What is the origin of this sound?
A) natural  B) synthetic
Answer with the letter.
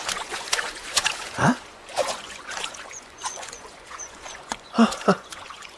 B